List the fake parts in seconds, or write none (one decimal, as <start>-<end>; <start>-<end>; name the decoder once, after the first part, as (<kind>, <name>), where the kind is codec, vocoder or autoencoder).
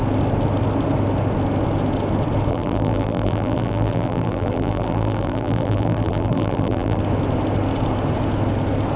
2.5-7.0 (vocoder, BigVGAN v2)